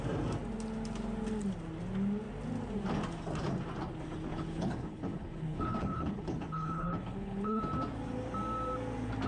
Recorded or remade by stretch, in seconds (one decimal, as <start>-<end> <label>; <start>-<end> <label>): 0.0-4.3 recorded; 4.3-7.6 remade; 7.6-9.3 recorded